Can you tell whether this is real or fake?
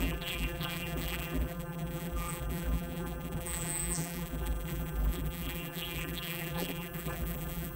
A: fake